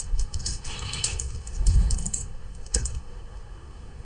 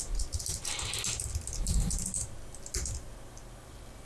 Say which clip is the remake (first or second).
first